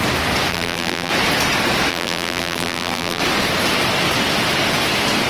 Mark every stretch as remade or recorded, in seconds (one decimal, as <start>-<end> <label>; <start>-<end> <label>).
0.0-0.5 recorded; 0.5-1.1 remade; 1.1-1.9 recorded; 1.9-3.2 remade; 3.2-5.3 recorded